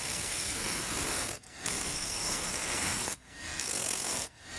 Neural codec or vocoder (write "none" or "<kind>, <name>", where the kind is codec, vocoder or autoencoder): codec, SNAC